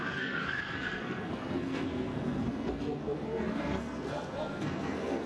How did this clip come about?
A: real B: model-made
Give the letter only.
B